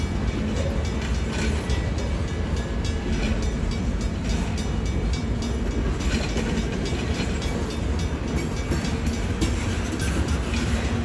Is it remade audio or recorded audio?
recorded